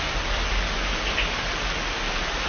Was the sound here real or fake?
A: real